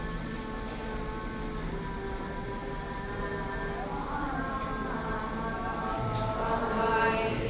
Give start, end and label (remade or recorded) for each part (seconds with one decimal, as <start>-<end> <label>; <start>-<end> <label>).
0.0-7.5 recorded